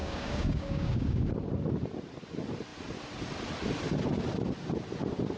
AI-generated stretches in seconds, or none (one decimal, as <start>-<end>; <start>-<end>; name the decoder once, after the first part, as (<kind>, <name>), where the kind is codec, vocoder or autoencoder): 0.0-1.3 (codec, DAC)